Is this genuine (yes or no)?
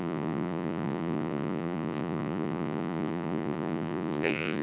no